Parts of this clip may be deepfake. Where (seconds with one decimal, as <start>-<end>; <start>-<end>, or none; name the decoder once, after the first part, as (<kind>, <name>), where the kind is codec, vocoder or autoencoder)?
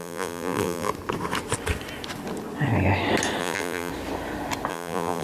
0.0-0.9 (vocoder, BigVGAN v2); 3.4-3.9; 4.7-5.2